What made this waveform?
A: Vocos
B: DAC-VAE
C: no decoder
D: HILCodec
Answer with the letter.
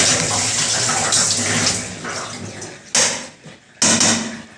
C